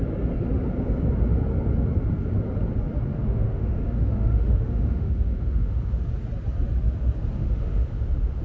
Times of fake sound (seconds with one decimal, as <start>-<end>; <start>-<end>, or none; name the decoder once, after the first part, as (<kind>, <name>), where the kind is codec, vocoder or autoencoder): 3.1-6.0 (autoencoder, DAC-VAE); 7.4-8.4